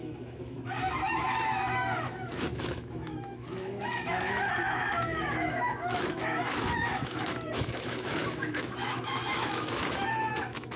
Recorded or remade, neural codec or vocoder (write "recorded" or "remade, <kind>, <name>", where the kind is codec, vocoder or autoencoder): remade, autoencoder, DAC-VAE